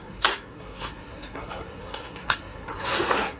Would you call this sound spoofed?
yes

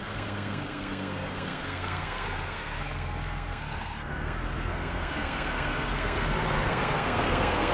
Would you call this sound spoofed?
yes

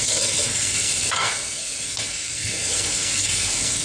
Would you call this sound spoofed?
yes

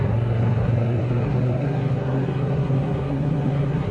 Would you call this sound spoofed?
yes